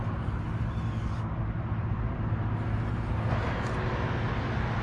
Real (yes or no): yes